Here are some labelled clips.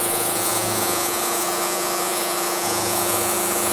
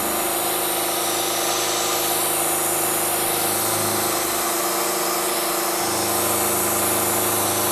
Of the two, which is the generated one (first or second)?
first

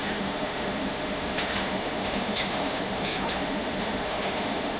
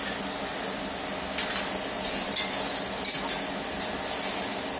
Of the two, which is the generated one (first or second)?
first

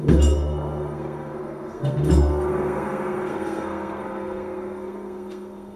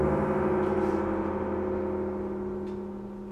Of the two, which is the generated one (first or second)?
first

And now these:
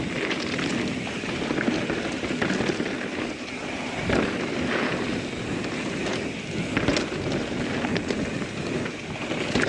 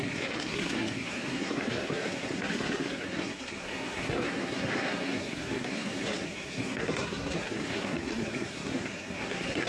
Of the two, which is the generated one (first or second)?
second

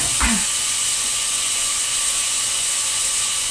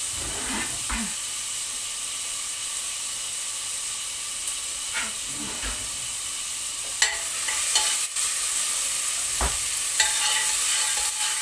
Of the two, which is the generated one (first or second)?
first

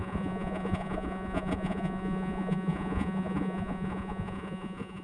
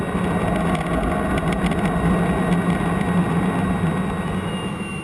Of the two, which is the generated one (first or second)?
first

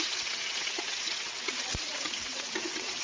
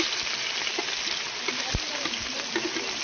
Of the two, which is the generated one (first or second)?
first